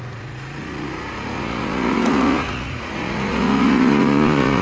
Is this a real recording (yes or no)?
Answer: no